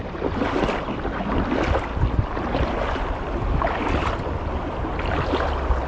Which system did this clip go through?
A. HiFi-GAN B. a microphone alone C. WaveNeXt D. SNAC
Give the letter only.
B